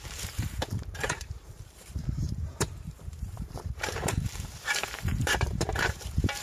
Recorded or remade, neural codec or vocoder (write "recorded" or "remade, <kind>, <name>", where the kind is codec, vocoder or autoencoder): remade, vocoder, BigVGAN v2